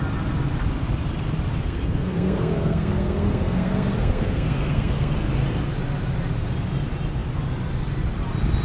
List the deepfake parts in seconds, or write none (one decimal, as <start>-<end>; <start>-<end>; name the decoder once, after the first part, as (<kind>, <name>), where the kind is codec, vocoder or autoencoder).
1.5-5.3 (codec, SNAC)